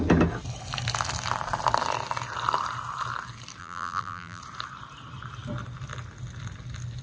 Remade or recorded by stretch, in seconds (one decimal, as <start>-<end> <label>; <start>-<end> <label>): 0.0-3.6 recorded; 3.6-4.4 remade; 4.4-7.0 recorded